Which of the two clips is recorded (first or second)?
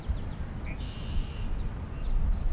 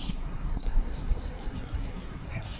first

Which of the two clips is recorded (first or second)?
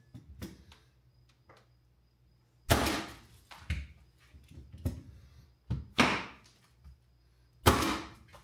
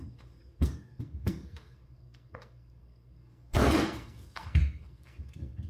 first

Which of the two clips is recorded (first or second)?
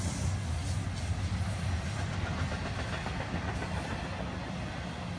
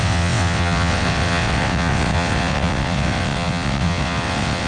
first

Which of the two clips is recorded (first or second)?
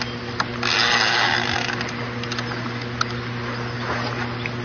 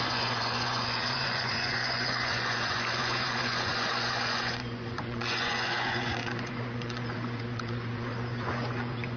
first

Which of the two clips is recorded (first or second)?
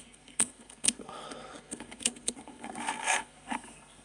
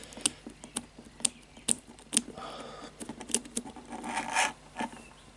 second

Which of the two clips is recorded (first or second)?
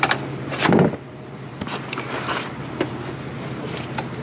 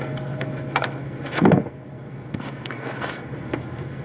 first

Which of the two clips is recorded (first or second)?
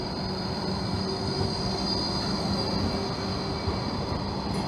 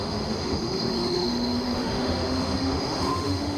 first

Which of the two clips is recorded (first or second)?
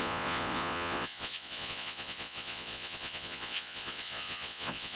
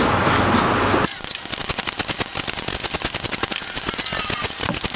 second